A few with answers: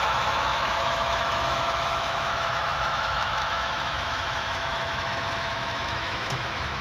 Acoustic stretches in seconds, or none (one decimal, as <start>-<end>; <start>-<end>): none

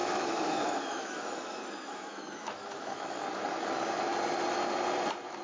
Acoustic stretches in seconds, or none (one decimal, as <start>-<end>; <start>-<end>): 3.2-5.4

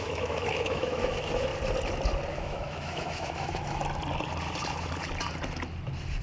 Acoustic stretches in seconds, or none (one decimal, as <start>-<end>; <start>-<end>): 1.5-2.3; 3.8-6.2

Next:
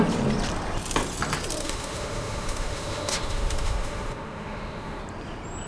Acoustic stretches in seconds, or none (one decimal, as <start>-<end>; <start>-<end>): 0.0-1.6; 5.0-5.7

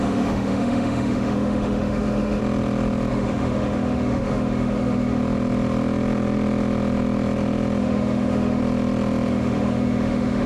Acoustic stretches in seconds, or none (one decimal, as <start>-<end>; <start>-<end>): 2.4-3.1; 5.2-7.8; 8.6-9.3

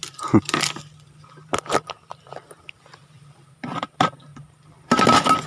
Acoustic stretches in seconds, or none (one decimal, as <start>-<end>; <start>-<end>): 0.0-5.5